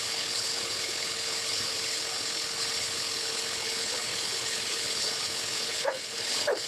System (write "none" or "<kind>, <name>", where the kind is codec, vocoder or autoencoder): codec, HILCodec